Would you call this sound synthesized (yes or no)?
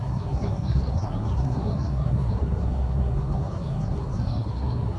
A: yes